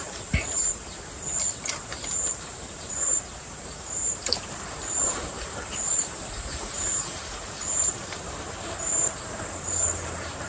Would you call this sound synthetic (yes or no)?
yes